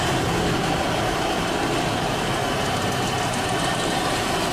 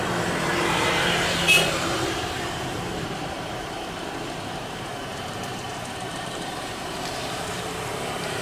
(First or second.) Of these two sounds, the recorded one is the first